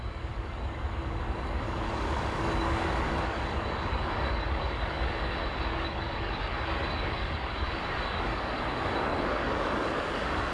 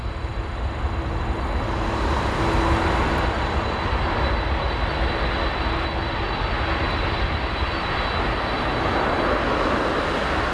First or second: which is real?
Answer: second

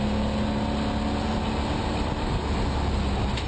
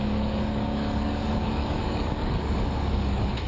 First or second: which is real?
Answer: first